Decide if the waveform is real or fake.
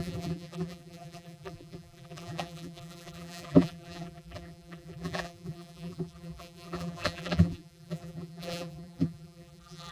fake